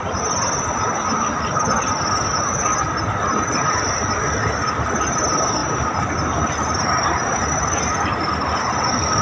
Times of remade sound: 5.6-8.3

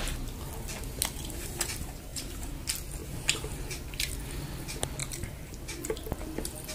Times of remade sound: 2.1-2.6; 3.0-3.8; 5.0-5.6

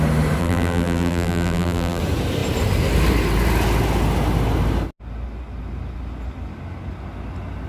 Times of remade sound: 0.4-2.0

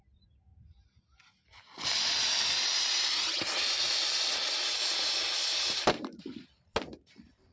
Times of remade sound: 5.4-6.2